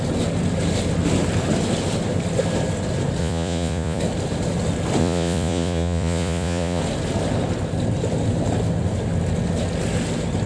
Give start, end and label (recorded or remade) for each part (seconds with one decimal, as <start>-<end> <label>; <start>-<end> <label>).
0.0-3.2 recorded; 3.2-4.0 remade; 4.0-5.0 recorded; 5.0-6.8 remade; 6.8-10.5 recorded